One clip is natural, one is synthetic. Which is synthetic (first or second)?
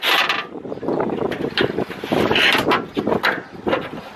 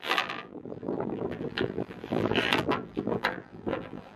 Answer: second